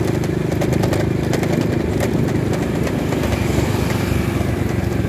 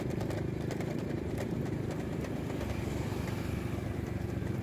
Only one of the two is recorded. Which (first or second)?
first